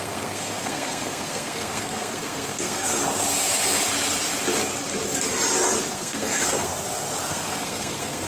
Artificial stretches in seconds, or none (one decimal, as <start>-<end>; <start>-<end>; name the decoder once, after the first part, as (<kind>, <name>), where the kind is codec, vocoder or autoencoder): 0.0-3.0 (codec, SNAC); 5.9-6.7; 7.3-8.3

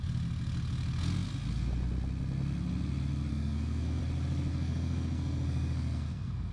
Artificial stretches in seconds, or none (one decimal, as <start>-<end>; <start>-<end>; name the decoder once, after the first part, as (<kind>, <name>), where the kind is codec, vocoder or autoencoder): 3.3-4.0 (codec, SNAC); 4.5-6.5

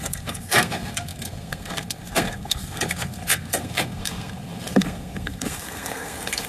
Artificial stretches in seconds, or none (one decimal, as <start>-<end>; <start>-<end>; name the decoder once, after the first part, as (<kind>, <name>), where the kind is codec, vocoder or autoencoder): 0.0-6.5 (codec, SNAC)

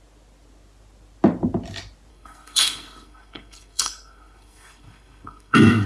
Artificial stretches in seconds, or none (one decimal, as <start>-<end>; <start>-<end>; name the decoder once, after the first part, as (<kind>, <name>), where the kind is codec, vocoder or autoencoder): 2.1-5.9 (codec, SNAC)

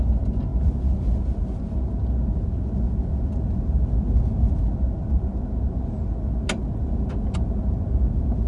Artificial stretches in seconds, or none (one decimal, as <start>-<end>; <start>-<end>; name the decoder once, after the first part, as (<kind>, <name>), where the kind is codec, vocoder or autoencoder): none